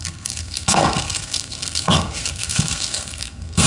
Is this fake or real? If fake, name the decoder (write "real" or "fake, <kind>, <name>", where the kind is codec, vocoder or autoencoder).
fake, codec, SNAC